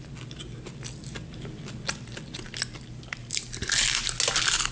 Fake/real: real